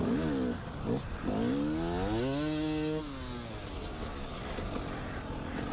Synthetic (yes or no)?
no